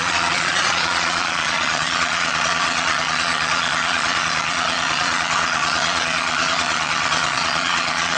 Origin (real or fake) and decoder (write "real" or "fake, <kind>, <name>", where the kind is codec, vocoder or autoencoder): fake, vocoder, Vocos